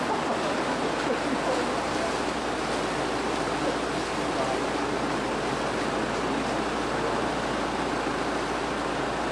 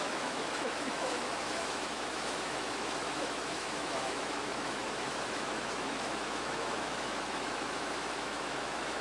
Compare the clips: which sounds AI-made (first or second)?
second